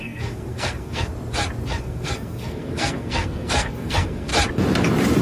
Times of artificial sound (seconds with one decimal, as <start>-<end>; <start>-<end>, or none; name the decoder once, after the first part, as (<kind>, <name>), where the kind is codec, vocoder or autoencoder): 0.0-1.1 (codec, SNAC); 1.8-4.3